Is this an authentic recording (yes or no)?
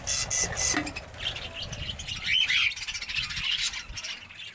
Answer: yes